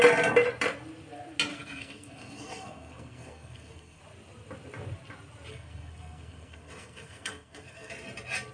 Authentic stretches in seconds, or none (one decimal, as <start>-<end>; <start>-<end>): 0.0-1.5; 4.0-5.5; 7.9-8.5